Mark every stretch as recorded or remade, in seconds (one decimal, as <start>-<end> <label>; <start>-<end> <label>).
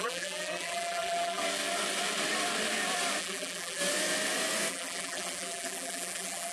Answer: 0.0-1.4 remade; 1.4-3.2 recorded; 3.2-3.8 remade; 3.8-4.7 recorded; 4.7-6.5 remade